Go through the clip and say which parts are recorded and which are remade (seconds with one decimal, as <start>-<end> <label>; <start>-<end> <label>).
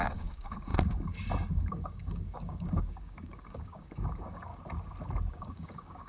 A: 0.0-4.5 remade; 4.5-5.3 recorded; 5.3-6.1 remade